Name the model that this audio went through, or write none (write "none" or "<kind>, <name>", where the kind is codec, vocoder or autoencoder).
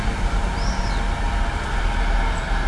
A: none